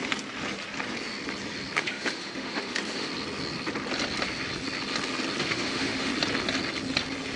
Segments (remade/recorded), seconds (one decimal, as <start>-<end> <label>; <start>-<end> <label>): 0.0-1.8 recorded; 1.8-3.1 remade; 3.1-5.4 recorded; 5.4-6.1 remade; 6.1-7.4 recorded